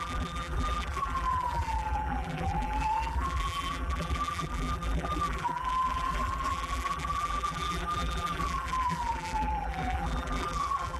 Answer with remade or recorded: remade